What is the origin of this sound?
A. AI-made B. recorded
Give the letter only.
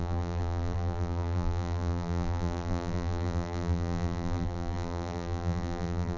A